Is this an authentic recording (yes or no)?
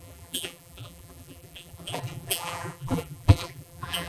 no